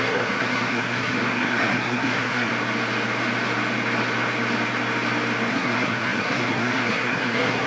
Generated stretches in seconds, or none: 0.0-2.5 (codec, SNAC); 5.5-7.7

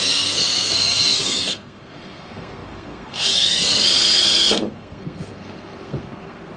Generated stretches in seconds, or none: 0.0-6.6 (codec, SNAC)

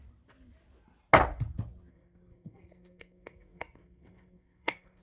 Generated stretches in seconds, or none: 1.9-5.0 (codec, SNAC)

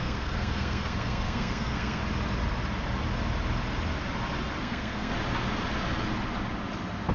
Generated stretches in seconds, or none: 0.0-2.0 (codec, SNAC); 4.6-5.1